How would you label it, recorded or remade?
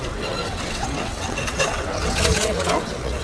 remade